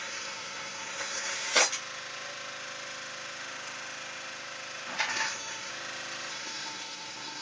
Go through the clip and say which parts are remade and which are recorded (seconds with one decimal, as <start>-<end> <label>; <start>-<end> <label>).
0.0-1.6 remade; 1.6-5.1 recorded; 5.1-5.7 remade; 5.7-6.3 recorded; 6.3-7.4 remade